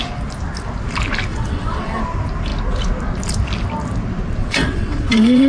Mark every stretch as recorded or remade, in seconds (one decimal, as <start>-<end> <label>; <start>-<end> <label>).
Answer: 0.0-1.3 recorded; 1.3-2.0 remade; 2.0-4.4 recorded; 4.4-5.5 remade